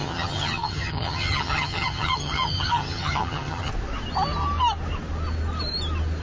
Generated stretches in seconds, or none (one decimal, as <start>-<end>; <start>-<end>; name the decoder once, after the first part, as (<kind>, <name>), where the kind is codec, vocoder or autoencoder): 0.0-3.7 (vocoder, HiFi-GAN)